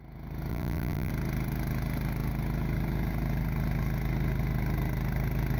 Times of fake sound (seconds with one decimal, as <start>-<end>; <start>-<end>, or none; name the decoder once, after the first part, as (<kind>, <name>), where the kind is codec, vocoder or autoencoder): 0.5-1.1 (vocoder, BigVGAN v2)